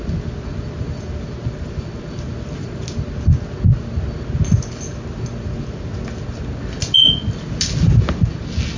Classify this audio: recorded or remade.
recorded